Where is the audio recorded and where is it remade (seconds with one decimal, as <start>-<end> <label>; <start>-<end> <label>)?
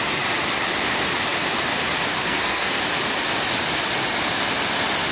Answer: 0.0-2.1 recorded; 2.1-2.8 remade; 2.8-5.1 recorded